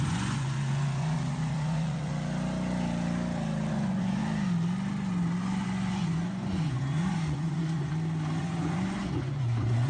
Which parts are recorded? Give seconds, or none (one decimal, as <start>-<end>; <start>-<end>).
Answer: 2.1-3.7; 4.2-5.4; 7.9-8.4